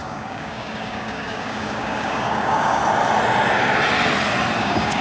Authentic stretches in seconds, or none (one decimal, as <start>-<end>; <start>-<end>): 2.8-4.6